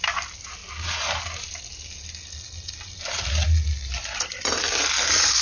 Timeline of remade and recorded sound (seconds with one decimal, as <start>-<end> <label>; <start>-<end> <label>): 0.0-0.6 remade; 0.6-3.8 recorded; 3.8-5.4 remade